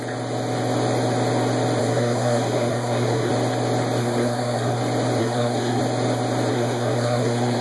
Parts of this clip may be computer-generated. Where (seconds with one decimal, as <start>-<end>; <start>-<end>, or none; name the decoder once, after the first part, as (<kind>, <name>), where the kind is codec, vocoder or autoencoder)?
1.8-3.3 (codec, SNAC); 4.0-4.8; 5.2-5.8; 6.5-7.6